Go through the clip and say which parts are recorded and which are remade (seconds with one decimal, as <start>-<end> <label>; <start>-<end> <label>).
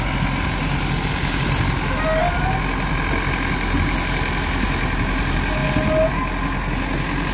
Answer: 0.0-7.3 recorded